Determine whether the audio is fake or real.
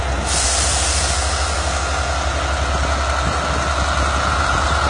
real